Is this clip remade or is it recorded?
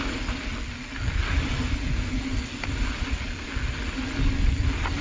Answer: recorded